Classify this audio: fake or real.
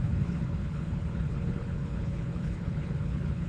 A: fake